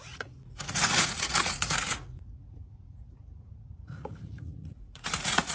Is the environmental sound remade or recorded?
remade